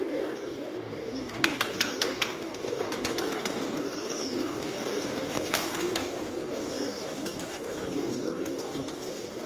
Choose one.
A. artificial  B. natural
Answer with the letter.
A